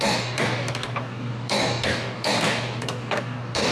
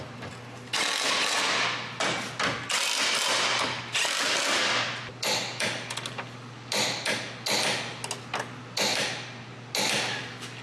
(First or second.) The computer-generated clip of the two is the first